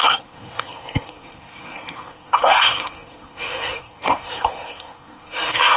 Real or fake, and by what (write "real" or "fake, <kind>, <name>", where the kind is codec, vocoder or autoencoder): fake, codec, SNAC